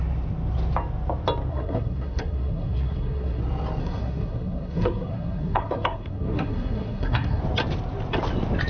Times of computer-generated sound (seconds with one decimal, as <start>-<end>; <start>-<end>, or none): 1.5-3.4; 3.8-7.4